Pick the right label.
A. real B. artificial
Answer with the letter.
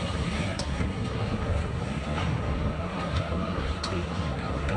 B